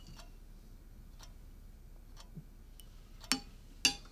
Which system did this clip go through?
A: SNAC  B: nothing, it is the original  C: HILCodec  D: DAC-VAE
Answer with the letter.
B